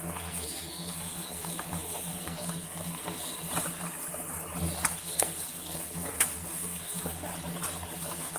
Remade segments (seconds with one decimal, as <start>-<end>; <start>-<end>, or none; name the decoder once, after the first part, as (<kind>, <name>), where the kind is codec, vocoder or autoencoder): 0.0-3.5 (codec, SNAC); 5.0-7.3; 8.0-8.4